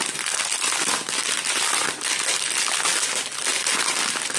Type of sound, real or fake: real